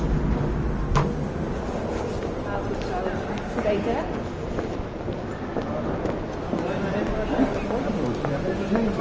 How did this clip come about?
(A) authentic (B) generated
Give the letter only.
A